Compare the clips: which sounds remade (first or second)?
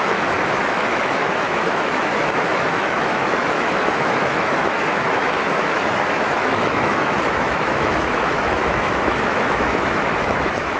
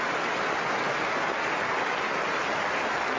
first